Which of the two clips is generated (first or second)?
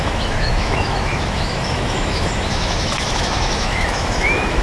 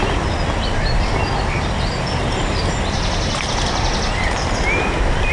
first